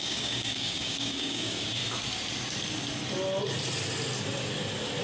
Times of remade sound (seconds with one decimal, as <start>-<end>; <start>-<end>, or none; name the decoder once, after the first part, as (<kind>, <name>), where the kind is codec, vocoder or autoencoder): 0.0-1.8 (codec, DAC)